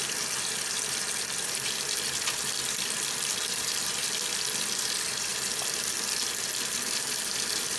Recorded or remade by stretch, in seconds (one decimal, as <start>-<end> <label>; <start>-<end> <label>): 0.0-5.3 remade; 5.3-6.6 recorded; 6.6-7.8 remade